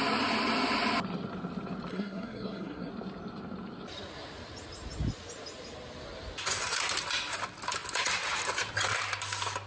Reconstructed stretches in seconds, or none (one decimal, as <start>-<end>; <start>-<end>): 1.9-2.9